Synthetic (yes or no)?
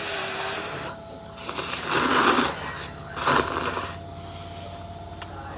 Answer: no